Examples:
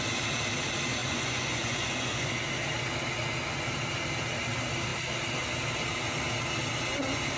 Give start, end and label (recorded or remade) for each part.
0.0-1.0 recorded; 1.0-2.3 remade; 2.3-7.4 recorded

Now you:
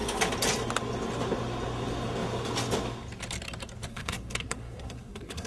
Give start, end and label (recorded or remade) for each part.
0.0-3.9 recorded; 3.9-5.5 remade

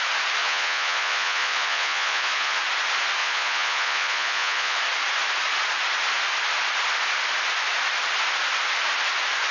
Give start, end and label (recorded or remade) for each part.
0.0-0.4 recorded; 0.4-2.6 remade; 2.6-3.2 recorded; 3.2-4.8 remade; 4.8-9.5 recorded

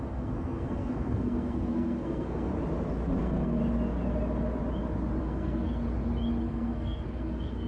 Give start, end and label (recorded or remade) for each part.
0.0-2.5 remade; 2.5-3.2 recorded; 3.2-3.6 remade; 3.6-5.2 recorded; 5.2-5.8 remade; 5.8-6.4 recorded; 6.4-7.7 remade

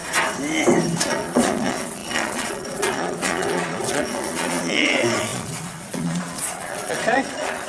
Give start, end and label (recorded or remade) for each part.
0.0-1.0 recorded; 1.0-7.7 remade

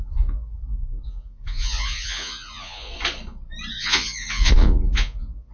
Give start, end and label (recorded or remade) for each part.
0.0-2.9 remade; 2.9-3.7 recorded; 3.7-5.5 remade

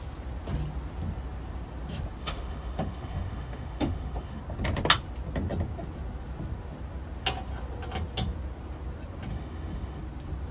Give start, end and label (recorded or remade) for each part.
0.0-2.2 recorded; 2.2-4.4 remade; 4.4-9.3 recorded; 9.3-10.0 remade; 10.0-10.5 recorded

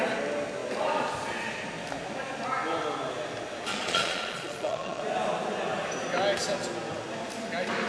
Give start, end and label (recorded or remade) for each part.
0.0-3.7 recorded; 3.7-5.0 remade; 5.0-7.9 recorded